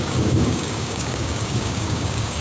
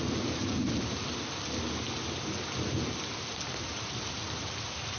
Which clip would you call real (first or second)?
second